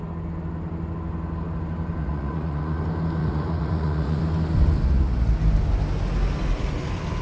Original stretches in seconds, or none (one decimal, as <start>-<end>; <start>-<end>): 0.0-2.0; 2.8-3.2; 4.2-7.2